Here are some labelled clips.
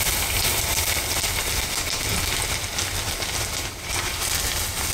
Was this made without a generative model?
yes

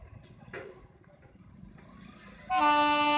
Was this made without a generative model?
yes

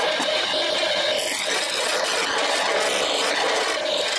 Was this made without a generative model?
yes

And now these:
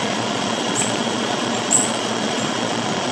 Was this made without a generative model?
no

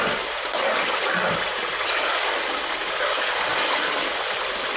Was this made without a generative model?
yes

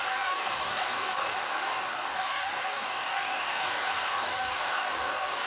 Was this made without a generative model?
no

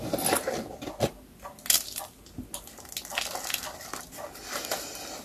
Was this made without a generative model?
yes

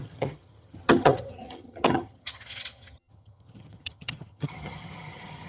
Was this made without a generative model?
no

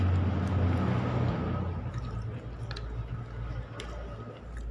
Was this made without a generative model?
yes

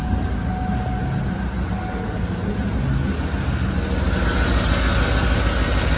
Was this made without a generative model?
yes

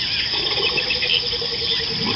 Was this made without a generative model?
yes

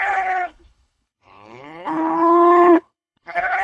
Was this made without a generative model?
no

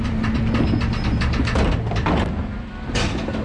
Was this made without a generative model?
yes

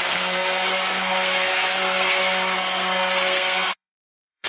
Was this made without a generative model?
no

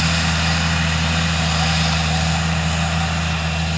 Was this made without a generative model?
yes